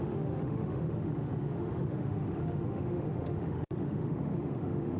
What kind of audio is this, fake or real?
fake